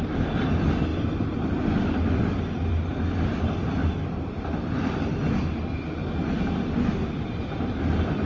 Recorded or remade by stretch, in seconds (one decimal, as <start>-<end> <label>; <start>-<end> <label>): 0.0-2.9 recorded; 2.9-5.2 remade; 5.2-8.3 recorded